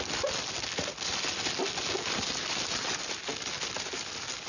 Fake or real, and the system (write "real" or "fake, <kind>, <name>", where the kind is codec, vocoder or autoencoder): real